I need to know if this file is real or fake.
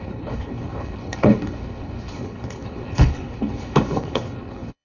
fake